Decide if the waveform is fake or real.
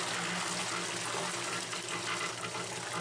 real